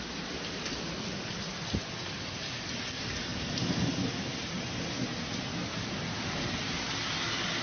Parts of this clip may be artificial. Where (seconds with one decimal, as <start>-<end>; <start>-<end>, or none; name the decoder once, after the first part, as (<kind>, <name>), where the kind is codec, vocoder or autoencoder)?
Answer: 5.5-6.8 (vocoder, BigVGAN v2)